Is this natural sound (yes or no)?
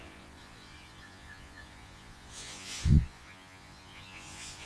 no